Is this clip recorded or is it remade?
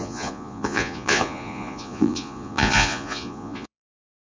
remade